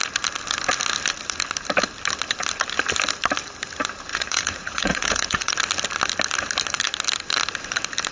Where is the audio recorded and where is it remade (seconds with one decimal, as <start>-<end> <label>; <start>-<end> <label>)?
0.0-4.1 recorded; 4.1-5.5 remade; 5.5-8.1 recorded